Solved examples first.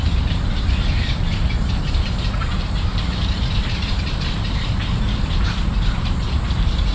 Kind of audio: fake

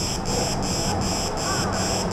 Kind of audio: real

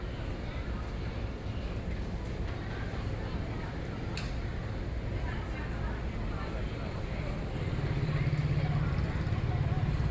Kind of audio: real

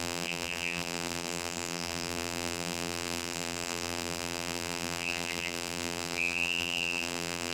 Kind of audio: fake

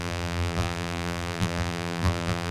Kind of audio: fake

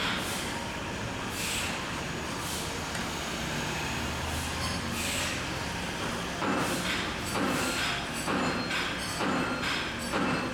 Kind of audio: real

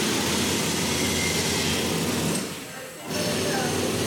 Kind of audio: real